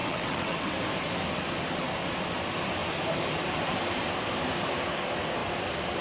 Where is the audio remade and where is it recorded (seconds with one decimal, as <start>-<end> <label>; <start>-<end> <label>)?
0.0-0.7 remade; 0.7-6.0 recorded